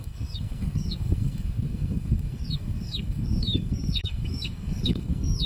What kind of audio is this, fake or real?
fake